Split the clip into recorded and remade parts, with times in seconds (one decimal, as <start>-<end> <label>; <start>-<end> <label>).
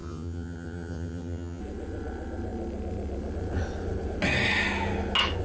0.0-1.6 remade; 1.6-5.4 recorded